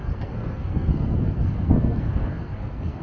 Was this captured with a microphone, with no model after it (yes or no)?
no